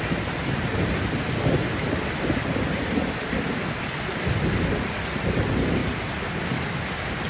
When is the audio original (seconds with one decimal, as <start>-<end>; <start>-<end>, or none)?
0.0-7.3